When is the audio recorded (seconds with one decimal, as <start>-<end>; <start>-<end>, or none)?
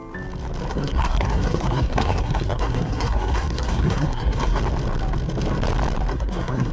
0.0-0.7; 4.6-6.1